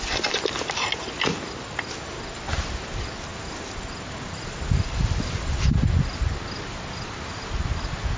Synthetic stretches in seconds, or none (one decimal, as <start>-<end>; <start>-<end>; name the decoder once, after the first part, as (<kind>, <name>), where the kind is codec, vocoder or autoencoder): none